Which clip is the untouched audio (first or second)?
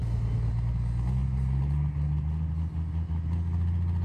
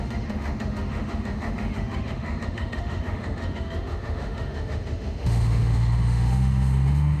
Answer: first